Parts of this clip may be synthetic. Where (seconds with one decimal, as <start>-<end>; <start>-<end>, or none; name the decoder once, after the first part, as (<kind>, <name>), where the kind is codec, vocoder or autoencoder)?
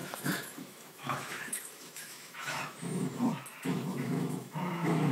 0.0-3.1 (autoencoder, DAC-VAE); 3.5-5.1